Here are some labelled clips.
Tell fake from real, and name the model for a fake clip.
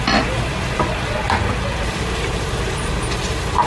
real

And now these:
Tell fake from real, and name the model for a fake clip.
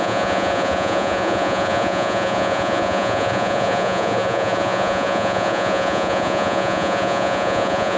fake, vocoder, Vocos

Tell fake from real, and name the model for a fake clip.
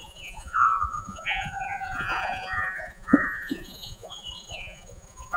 fake, vocoder, Vocos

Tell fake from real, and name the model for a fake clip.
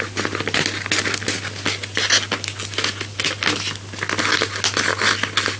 real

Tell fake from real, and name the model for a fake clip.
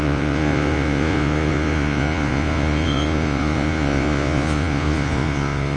fake, vocoder, Vocos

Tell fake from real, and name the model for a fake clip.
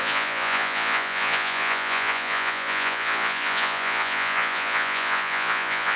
fake, vocoder, Vocos